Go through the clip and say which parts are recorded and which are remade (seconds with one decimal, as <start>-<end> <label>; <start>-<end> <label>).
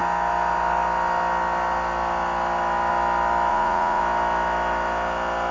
0.0-3.5 recorded; 3.5-4.0 remade; 4.0-5.5 recorded